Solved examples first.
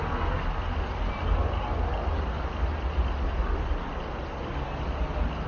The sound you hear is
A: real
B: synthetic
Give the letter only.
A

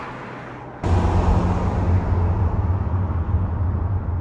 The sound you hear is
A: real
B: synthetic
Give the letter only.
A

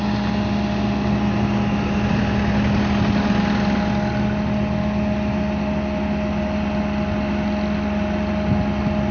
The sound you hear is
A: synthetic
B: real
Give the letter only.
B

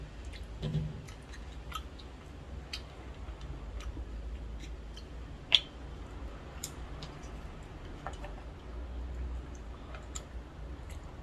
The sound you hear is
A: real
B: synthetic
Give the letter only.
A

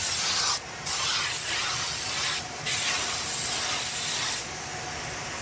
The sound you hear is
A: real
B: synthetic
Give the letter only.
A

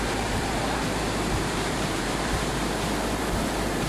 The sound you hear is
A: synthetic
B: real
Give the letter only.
A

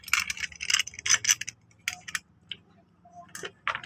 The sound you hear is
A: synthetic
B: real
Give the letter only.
B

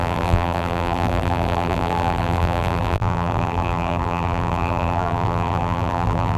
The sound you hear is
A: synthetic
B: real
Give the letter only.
A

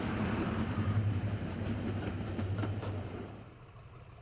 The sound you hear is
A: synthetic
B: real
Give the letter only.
A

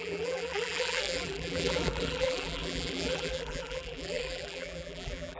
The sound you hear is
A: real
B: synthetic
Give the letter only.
B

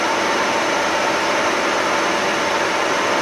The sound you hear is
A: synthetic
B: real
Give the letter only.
A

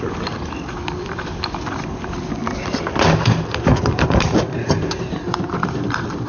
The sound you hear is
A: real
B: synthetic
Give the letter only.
B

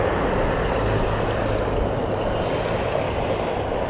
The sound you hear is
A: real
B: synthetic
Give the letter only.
A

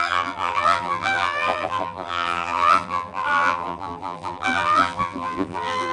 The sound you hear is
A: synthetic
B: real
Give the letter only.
A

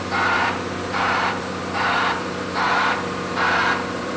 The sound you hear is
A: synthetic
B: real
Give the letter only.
A